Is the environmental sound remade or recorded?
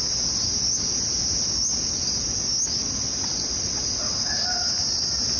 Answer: recorded